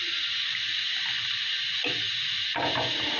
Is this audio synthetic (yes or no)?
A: no